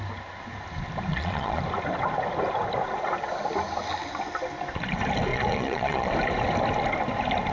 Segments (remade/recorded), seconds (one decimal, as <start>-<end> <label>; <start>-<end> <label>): 0.0-1.1 recorded; 1.1-1.6 remade; 1.6-5.3 recorded; 5.3-6.1 remade; 6.1-7.5 recorded